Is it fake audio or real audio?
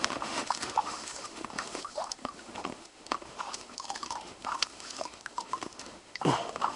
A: fake